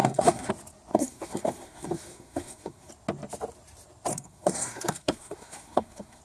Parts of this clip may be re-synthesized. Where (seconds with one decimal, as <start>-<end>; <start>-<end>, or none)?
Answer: 0.0-0.5; 0.9-2.9; 4.1-6.2